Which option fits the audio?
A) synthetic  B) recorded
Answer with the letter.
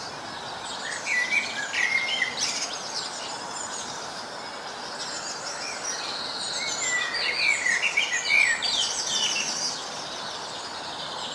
B